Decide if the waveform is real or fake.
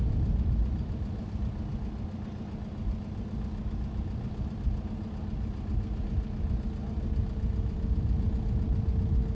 real